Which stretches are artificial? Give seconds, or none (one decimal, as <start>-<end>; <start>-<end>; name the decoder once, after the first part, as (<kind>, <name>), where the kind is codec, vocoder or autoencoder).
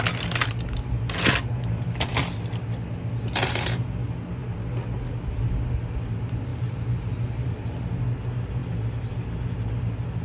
6.5-7.8 (vocoder, BigVGAN v2)